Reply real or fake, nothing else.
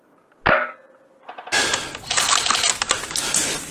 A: real